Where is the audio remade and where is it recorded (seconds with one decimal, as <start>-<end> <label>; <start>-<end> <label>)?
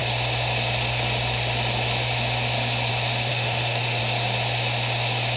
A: 0.0-3.3 recorded; 3.3-4.0 remade; 4.0-5.4 recorded